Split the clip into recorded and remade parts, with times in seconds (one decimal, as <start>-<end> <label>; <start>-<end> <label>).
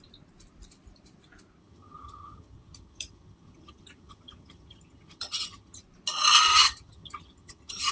0.0-1.6 recorded; 1.6-5.8 remade; 5.8-6.5 recorded; 6.5-7.9 remade